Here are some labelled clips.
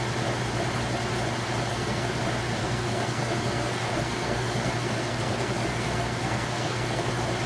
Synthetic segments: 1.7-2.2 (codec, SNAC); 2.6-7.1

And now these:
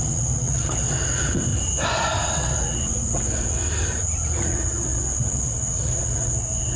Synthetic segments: 0.0-1.5 (vocoder, WaveNeXt); 2.2-3.6; 4.4-6.8

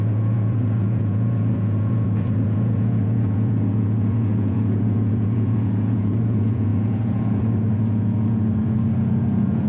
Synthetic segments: 0.0-9.7 (vocoder, Vocos)

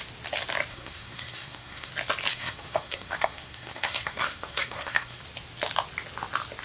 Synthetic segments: 0.7-1.9 (codec, SNAC); 2.3-5.2

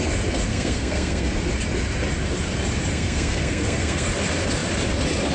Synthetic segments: 0.5-1.3 (codec, SNAC); 2.9-4.1

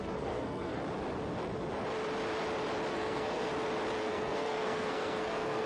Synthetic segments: 0.0-0.8 (codec, SNAC); 2.9-3.5; 4.0-5.7